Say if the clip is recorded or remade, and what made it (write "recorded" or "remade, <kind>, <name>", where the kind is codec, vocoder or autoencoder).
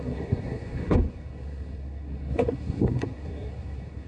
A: remade, codec, SNAC